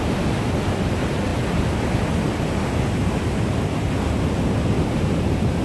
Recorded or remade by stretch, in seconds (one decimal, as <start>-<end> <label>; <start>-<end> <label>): 0.0-5.6 recorded